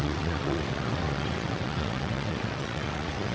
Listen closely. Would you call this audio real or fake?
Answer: fake